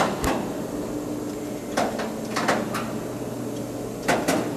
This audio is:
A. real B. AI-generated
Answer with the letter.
A